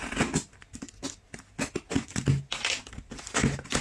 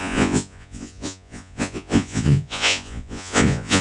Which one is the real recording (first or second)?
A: first